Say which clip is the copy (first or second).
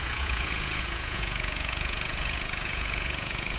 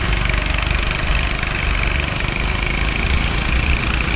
first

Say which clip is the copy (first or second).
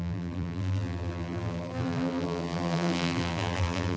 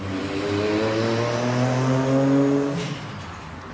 first